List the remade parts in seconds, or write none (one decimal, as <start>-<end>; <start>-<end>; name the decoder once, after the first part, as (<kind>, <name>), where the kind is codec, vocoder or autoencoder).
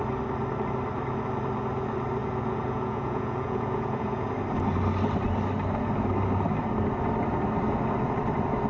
2.2-4.3 (vocoder, Vocos)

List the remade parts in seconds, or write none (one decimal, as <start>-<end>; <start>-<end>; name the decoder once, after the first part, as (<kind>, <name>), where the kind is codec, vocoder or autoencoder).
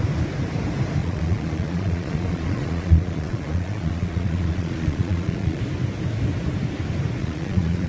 1.0-5.6 (vocoder, Vocos); 7.2-7.9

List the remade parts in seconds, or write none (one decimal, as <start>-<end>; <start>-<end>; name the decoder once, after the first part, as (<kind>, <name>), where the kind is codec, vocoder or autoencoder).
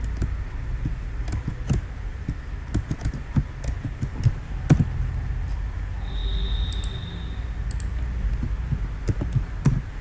none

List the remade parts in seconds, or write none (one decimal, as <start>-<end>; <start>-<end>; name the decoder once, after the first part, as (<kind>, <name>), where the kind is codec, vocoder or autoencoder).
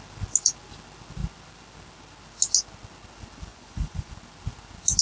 3.5-4.1 (vocoder, Vocos)